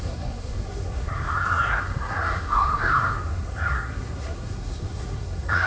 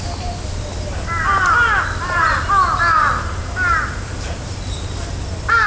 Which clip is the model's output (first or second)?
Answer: first